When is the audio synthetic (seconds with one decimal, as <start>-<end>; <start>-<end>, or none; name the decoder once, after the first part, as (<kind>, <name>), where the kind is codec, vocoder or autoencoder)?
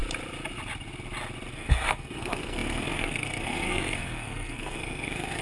1.5-5.4 (codec, SNAC)